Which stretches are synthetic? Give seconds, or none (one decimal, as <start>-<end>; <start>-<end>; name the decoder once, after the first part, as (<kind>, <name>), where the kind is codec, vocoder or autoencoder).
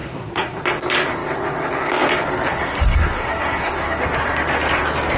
0.0-0.6 (codec, SNAC); 2.5-4.0